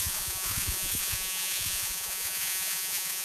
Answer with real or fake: fake